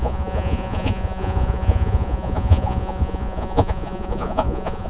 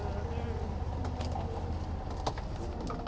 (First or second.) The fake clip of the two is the first